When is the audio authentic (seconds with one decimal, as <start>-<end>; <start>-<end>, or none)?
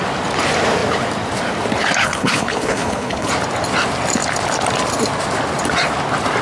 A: 0.0-2.0; 3.3-6.4